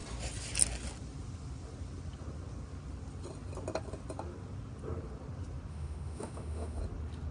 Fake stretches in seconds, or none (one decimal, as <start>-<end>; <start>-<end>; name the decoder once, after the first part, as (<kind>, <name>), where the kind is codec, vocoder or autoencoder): 5.7-6.8 (autoencoder, DAC-VAE)